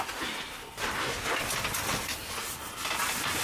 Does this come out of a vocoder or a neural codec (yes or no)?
no